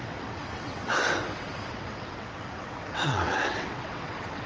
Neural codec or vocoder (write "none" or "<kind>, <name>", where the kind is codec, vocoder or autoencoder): vocoder, WaveNeXt